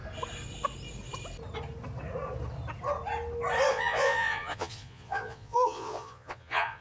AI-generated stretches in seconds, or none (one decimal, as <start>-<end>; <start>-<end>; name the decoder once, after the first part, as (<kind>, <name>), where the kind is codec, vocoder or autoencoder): 3.7-6.8 (vocoder, Vocos)